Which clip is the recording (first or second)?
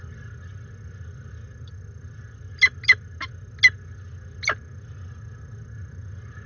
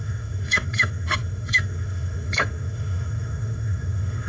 first